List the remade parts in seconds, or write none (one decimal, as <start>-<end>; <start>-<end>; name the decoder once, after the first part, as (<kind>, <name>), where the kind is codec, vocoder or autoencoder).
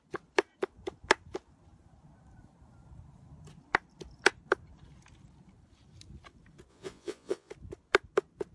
6.7-7.5 (vocoder, Vocos)